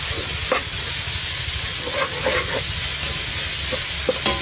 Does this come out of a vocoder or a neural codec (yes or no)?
no